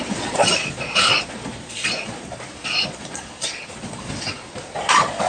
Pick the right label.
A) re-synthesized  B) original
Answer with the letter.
A